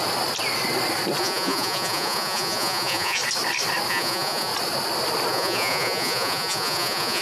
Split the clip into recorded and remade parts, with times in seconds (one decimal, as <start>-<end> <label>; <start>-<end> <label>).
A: 0.0-1.2 recorded; 1.2-3.2 remade; 3.2-3.9 recorded; 3.9-4.5 remade; 4.5-5.3 recorded; 5.3-7.2 remade